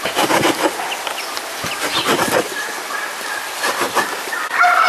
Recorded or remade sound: recorded